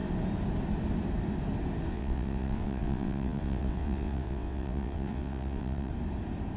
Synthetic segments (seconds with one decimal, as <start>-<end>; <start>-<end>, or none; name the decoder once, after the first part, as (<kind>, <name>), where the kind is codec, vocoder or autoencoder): 1.9-5.9 (vocoder, WaveNeXt)